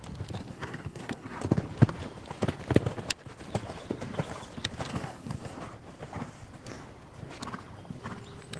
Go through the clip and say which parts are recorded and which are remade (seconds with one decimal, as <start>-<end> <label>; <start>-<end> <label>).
0.0-0.4 recorded; 0.4-1.4 remade; 1.4-4.9 recorded; 4.9-5.6 remade; 5.6-8.6 recorded